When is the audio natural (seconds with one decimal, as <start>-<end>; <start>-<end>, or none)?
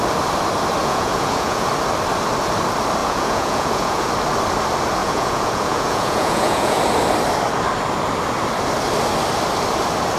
0.0-0.8; 1.7-3.0; 4.1-5.0; 6.8-10.2